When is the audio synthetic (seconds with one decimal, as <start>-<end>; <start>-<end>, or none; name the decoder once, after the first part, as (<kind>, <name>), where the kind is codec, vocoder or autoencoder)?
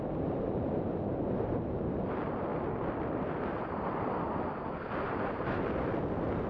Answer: none